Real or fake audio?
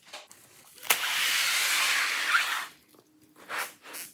real